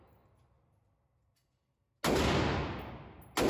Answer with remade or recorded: recorded